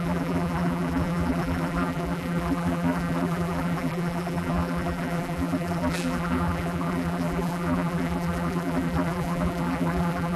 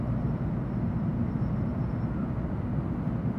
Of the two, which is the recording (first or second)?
second